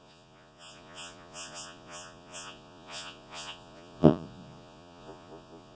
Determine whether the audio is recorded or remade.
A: remade